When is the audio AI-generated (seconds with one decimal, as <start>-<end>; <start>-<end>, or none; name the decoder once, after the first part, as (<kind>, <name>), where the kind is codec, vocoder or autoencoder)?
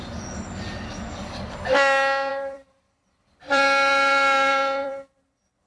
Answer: 2.3-5.7 (vocoder, BigVGAN v2)